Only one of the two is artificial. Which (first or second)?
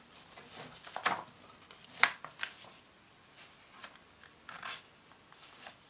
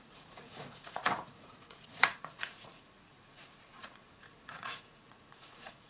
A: second